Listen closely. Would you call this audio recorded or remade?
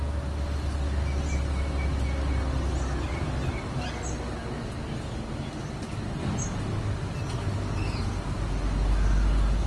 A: recorded